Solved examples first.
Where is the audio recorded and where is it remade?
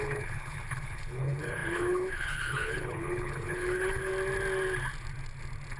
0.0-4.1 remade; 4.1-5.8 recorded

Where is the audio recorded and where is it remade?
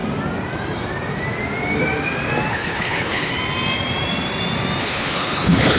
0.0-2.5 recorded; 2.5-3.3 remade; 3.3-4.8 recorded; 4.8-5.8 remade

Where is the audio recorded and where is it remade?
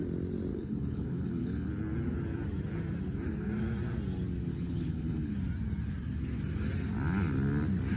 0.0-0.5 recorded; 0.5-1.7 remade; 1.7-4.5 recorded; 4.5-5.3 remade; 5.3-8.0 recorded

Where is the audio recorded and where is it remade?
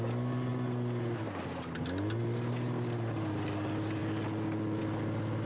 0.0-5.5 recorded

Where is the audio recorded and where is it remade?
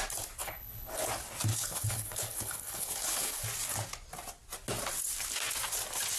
0.0-0.4 recorded; 0.4-1.1 remade; 1.1-1.5 recorded; 1.5-3.4 remade; 3.4-6.2 recorded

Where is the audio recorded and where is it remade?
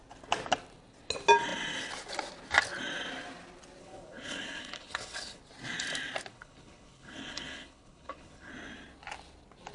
0.0-3.8 recorded; 3.8-5.4 remade; 5.4-6.3 recorded; 6.3-8.5 remade; 8.5-9.7 recorded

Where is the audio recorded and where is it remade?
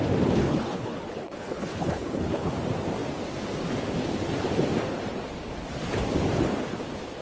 0.0-0.4 recorded; 0.4-2.5 remade; 2.5-7.2 recorded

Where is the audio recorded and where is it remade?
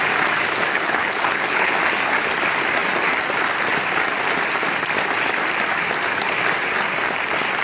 0.0-0.7 recorded; 0.7-1.7 remade; 1.7-7.6 recorded